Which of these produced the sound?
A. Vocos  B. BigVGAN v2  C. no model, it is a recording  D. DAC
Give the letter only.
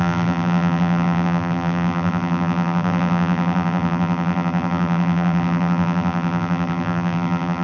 B